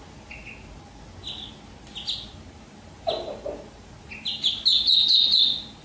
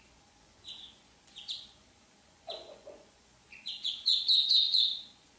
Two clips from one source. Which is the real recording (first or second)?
first